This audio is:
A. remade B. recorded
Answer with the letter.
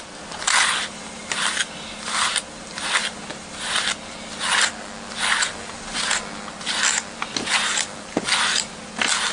B